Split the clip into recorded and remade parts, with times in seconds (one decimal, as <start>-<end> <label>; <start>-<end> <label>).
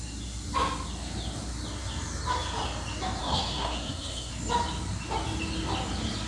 0.0-3.2 recorded; 3.2-4.3 remade; 4.3-6.3 recorded